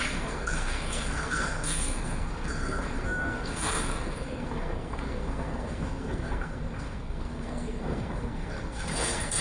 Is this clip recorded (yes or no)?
no